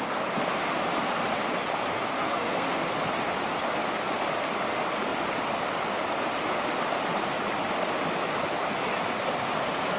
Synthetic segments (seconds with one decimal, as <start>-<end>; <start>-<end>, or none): 2.1-2.8